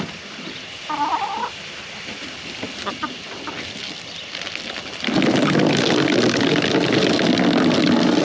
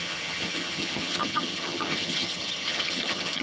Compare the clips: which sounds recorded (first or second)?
first